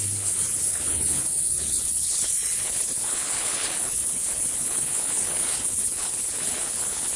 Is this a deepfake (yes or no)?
yes